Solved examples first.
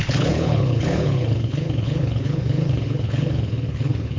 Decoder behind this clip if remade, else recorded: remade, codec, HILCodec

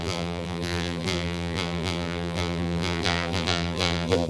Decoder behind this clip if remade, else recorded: remade, vocoder, BigVGAN v2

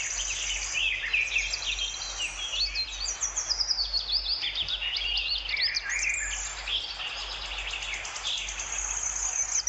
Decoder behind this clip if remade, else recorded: recorded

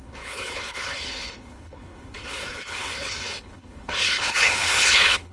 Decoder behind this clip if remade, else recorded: remade, codec, HILCodec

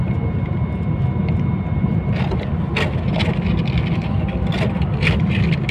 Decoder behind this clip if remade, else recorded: recorded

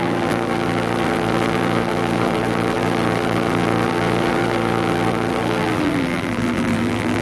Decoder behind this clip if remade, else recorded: remade, vocoder, BigVGAN v2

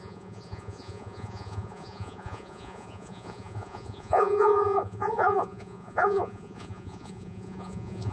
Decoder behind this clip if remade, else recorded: remade, vocoder, Vocos